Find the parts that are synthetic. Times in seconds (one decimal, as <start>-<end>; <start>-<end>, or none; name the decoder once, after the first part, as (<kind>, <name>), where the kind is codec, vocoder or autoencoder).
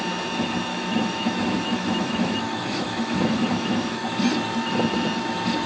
0.7-4.1 (autoencoder, DAC-VAE)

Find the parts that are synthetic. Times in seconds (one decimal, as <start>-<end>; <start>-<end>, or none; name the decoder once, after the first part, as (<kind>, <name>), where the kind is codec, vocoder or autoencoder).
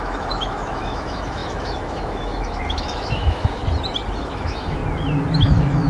0.0-3.6 (autoencoder, DAC-VAE); 4.2-4.8; 5.4-5.9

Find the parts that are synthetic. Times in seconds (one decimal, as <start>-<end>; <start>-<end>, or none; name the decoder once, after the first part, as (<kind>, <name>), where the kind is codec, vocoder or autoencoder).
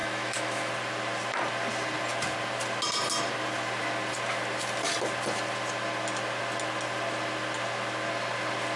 0.0-0.7 (autoencoder, DAC-VAE)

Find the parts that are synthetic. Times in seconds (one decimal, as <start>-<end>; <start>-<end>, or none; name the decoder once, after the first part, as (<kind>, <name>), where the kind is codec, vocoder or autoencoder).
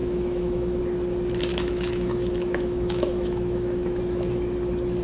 0.0-0.8 (autoencoder, DAC-VAE); 1.5-4.0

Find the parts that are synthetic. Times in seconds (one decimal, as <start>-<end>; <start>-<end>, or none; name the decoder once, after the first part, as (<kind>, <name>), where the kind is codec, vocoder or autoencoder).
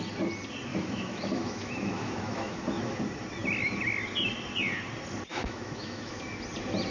0.7-3.0 (autoencoder, DAC-VAE); 5.3-6.2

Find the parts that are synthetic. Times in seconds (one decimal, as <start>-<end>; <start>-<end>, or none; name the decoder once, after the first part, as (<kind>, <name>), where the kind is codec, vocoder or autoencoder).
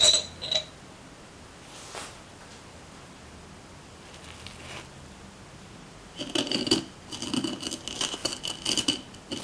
none